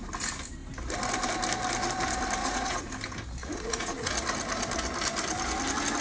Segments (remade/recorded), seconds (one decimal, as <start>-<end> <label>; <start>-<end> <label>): 0.0-2.4 recorded; 2.4-2.9 remade; 2.9-3.4 recorded; 3.4-4.1 remade; 4.1-6.0 recorded